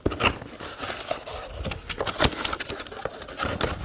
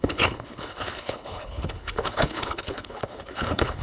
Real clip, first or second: first